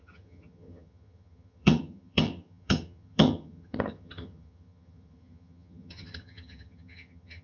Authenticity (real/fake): fake